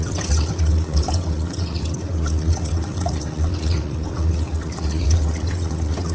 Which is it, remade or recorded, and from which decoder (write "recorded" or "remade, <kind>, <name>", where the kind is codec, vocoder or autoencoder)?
remade, vocoder, WaveNeXt